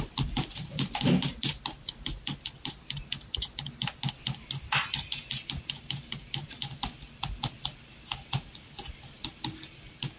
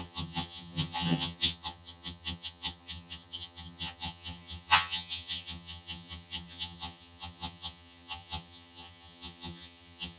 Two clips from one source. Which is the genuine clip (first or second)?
first